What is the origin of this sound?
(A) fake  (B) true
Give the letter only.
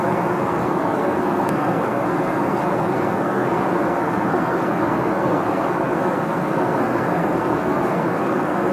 A